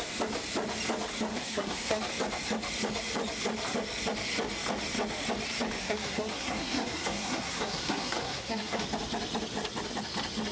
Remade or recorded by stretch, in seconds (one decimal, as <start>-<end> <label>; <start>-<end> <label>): 0.0-1.3 recorded; 1.3-2.0 remade; 2.0-5.8 recorded; 5.8-8.8 remade; 8.8-10.5 recorded